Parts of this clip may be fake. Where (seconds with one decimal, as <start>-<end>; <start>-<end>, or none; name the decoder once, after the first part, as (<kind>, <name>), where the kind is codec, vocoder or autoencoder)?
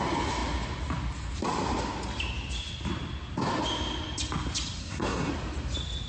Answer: 4.8-5.3 (codec, SNAC)